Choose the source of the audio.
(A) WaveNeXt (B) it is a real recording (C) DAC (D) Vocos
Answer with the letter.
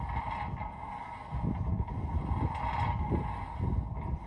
B